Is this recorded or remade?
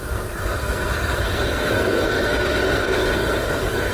remade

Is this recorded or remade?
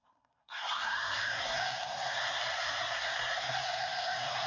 remade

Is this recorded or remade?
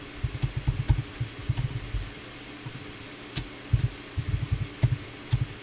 recorded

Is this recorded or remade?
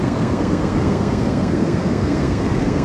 remade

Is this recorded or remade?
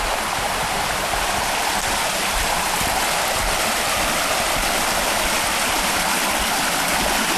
recorded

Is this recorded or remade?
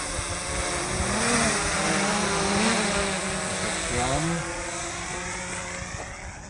recorded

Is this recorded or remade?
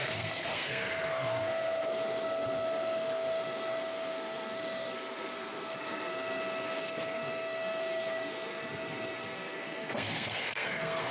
remade